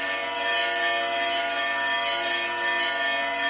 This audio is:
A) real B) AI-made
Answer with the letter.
A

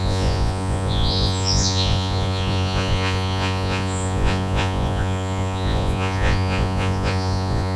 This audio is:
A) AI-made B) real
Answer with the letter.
A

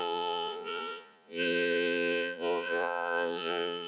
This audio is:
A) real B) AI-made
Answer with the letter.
B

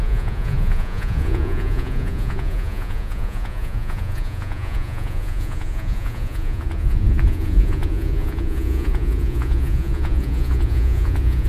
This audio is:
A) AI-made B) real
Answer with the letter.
A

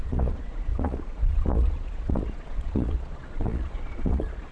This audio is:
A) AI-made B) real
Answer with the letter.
A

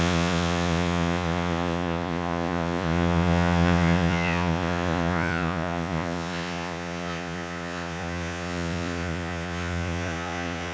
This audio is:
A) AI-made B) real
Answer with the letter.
A